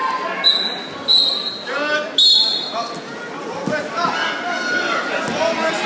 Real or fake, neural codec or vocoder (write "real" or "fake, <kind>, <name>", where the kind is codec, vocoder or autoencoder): real